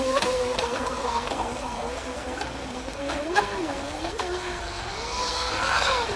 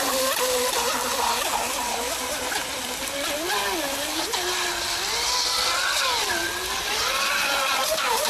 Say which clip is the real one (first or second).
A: second